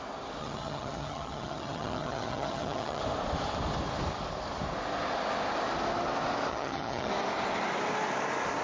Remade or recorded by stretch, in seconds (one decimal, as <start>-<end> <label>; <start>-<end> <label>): 0.0-0.4 recorded; 0.4-3.0 remade; 3.0-6.5 recorded; 6.5-7.1 remade; 7.1-8.6 recorded

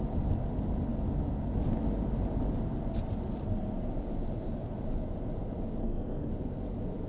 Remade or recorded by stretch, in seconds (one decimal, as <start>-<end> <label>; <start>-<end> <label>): 0.0-5.8 recorded; 5.8-6.3 remade; 6.3-7.1 recorded

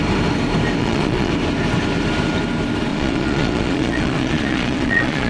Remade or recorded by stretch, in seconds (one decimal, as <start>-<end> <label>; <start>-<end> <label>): 0.0-0.8 recorded; 0.8-1.3 remade; 1.3-2.9 recorded; 2.9-5.3 remade